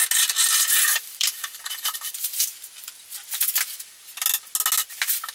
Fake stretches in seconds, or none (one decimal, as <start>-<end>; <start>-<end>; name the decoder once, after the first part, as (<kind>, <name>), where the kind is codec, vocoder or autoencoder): 0.9-2.1 (vocoder, BigVGAN v2)